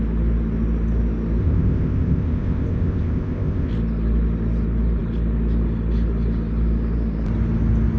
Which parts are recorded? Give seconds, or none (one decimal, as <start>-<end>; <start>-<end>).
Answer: 0.0-1.4; 3.7-8.0